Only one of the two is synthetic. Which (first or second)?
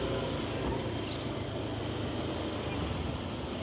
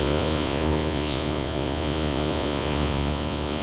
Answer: second